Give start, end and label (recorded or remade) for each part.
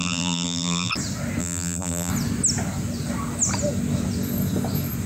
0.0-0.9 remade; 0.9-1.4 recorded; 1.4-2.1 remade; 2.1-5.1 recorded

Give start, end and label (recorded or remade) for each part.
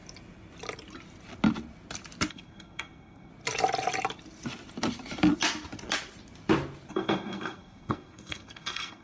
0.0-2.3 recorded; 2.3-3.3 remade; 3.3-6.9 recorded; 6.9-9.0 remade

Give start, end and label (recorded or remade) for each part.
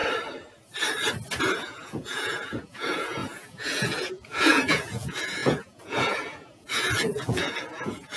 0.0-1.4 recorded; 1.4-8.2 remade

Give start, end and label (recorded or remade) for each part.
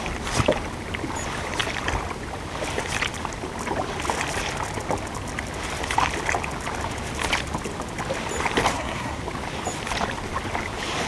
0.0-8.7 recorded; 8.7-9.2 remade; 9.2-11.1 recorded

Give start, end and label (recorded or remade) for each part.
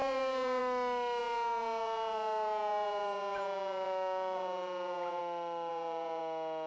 0.0-0.6 remade; 0.6-1.2 recorded; 1.2-5.2 remade; 5.2-5.7 recorded; 5.7-6.2 remade; 6.2-6.7 recorded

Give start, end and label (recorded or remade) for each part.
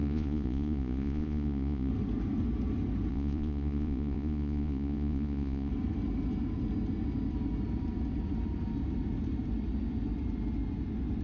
0.0-1.9 remade; 1.9-3.1 recorded; 3.1-5.7 remade; 5.7-11.2 recorded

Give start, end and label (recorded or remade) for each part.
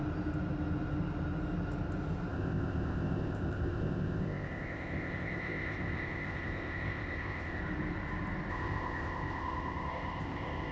0.0-2.3 recorded; 2.3-7.6 remade; 7.6-8.5 recorded; 8.5-10.7 remade